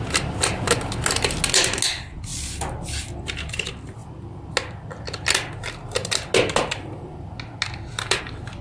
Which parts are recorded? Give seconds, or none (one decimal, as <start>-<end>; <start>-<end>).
0.0-8.6